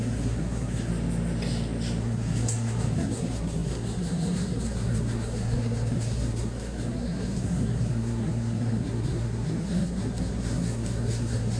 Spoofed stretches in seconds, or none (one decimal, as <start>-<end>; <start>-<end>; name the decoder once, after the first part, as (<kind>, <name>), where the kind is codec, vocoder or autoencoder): 0.0-0.9 (codec, SNAC); 2.0-11.6